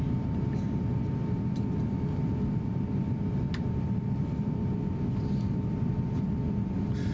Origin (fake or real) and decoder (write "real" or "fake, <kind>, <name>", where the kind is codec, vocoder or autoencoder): real